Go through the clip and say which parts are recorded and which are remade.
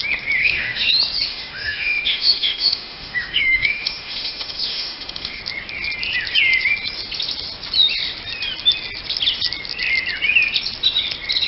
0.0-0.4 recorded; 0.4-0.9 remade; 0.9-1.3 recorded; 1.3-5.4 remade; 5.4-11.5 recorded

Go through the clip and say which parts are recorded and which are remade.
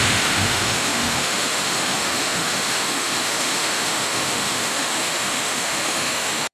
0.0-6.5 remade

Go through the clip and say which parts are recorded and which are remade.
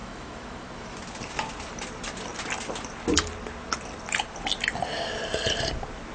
0.0-1.0 remade; 1.0-6.1 recorded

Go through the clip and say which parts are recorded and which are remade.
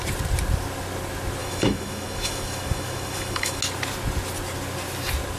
0.0-1.4 recorded; 1.4-3.6 remade; 3.6-5.4 recorded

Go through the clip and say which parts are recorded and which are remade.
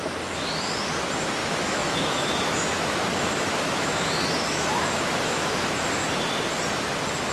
0.0-1.4 recorded; 1.4-5.7 remade; 5.7-7.3 recorded